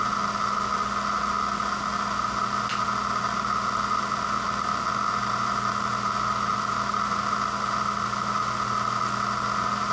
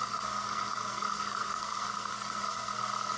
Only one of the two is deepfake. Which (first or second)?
second